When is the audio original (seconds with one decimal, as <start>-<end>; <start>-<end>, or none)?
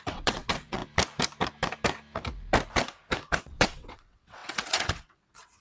0.8-3.4